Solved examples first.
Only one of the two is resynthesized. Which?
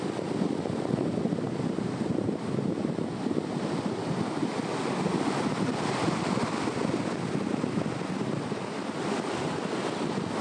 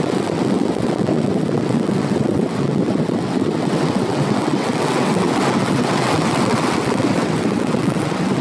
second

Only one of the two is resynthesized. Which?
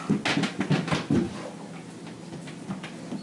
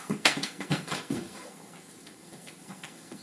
second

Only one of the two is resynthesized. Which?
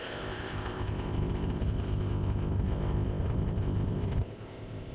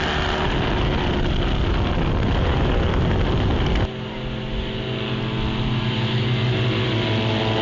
first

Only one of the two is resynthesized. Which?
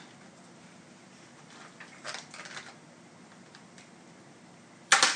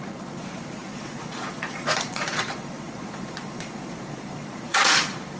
second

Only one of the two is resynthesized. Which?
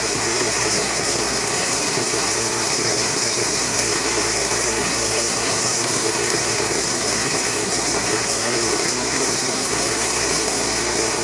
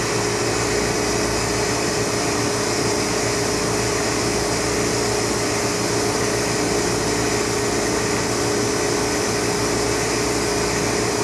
first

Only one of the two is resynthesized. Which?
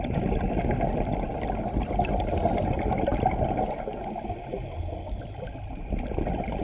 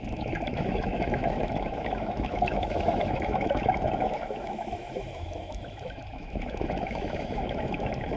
second